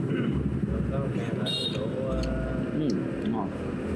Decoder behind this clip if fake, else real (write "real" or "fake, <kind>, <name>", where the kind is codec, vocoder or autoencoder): real